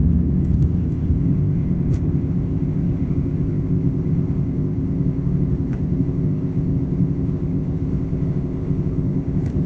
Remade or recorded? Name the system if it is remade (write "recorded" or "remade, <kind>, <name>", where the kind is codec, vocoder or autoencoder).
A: remade, codec, ZipCodec